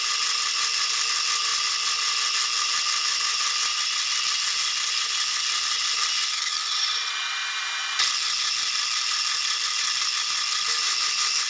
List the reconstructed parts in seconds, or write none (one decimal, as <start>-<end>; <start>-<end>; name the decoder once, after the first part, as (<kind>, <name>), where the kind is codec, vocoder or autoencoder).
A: none